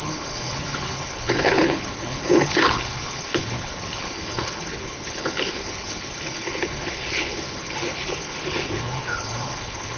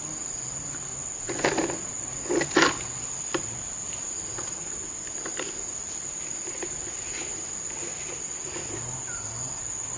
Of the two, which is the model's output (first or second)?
first